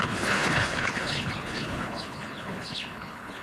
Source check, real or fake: fake